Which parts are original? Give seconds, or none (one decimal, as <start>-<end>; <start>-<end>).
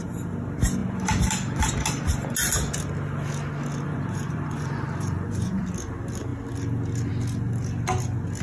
0.0-3.9; 5.6-8.4